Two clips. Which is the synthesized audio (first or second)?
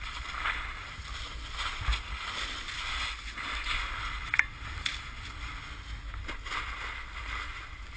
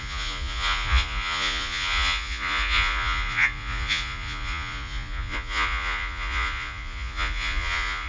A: second